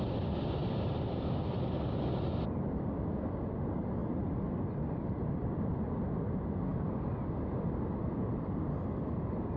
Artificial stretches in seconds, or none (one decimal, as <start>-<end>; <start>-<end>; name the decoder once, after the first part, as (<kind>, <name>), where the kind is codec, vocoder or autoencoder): 0.0-0.6 (vocoder, BigVGAN v2); 2.3-4.0; 4.9-6.7; 8.0-9.6